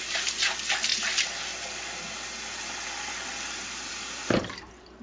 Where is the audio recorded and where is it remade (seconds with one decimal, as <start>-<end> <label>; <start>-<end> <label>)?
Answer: 0.0-5.0 recorded